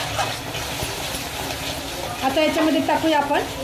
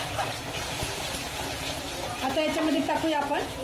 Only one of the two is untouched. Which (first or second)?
first